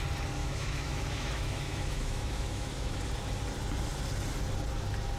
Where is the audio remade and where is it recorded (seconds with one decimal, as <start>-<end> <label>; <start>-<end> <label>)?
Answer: 0.0-0.4 recorded; 0.4-3.0 remade; 3.0-5.2 recorded